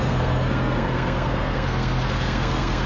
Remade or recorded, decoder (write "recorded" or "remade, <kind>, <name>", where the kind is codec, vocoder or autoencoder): remade, codec, SNAC